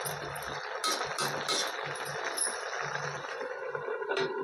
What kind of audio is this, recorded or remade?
recorded